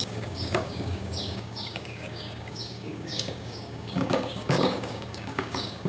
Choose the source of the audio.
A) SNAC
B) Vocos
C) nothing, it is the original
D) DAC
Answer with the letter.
D